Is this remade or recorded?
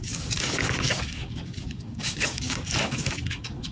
remade